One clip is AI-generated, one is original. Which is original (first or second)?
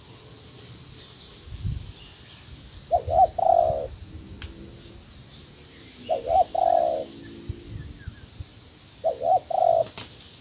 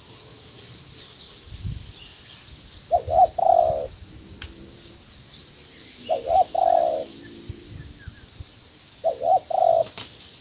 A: first